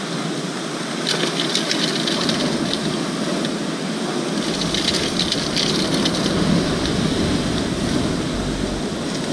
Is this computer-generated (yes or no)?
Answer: no